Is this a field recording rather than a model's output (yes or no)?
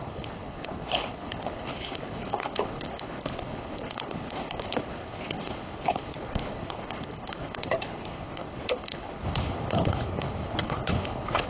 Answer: no